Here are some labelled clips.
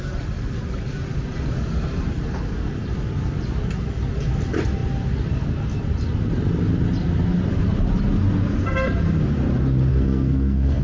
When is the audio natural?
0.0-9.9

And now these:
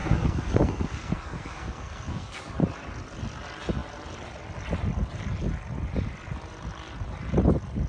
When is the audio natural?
2.4-7.9